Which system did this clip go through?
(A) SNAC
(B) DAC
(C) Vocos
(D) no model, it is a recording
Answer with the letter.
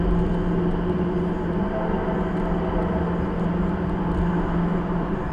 D